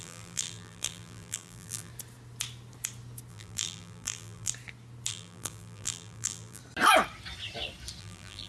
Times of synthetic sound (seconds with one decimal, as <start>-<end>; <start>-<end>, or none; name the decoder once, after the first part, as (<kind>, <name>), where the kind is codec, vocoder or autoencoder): 0.0-1.9 (vocoder, BigVGAN v2); 3.3-4.5; 5.1-6.6; 8.0-8.5